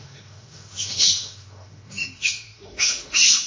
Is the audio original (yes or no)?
no